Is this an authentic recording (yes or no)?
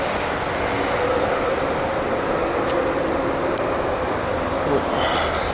yes